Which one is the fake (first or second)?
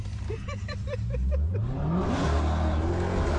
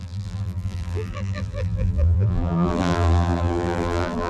second